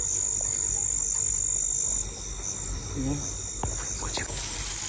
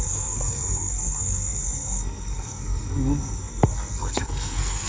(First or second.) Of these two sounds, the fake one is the second